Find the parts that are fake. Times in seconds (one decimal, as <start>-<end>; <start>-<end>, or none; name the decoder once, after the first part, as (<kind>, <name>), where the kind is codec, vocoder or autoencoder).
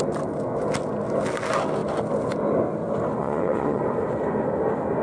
3.2-3.8 (vocoder, Vocos)